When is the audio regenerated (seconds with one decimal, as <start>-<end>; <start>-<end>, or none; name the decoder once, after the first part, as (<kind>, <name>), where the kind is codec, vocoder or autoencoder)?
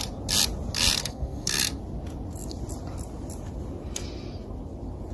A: 1.0-1.8 (codec, SNAC)